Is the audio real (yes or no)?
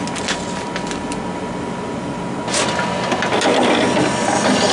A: yes